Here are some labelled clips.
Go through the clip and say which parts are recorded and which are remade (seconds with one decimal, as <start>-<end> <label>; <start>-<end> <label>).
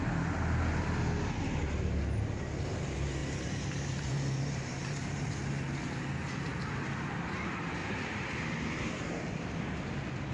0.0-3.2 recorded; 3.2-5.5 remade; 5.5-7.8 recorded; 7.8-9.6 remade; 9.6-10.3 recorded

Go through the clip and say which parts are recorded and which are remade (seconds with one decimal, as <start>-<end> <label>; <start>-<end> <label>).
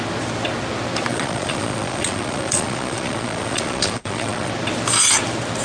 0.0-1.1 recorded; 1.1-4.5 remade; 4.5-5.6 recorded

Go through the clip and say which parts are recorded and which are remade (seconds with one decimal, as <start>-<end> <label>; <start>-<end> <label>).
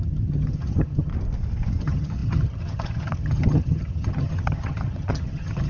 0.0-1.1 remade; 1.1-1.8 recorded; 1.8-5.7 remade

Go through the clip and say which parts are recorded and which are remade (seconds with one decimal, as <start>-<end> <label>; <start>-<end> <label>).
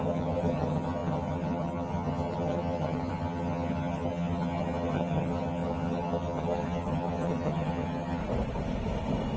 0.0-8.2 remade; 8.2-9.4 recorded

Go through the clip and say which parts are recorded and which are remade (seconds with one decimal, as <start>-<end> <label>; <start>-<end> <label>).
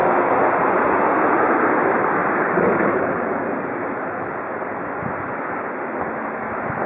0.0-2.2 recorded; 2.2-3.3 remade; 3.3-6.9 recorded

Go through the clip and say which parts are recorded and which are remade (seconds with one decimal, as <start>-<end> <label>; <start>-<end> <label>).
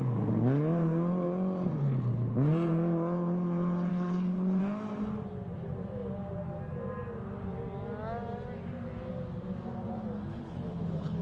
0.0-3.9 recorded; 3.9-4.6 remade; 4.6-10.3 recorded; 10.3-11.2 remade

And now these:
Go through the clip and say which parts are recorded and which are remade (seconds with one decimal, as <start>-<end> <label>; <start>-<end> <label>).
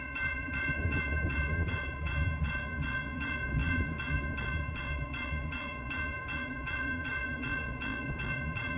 0.0-8.8 remade